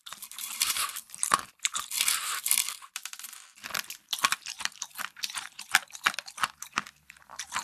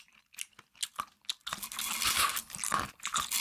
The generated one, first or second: first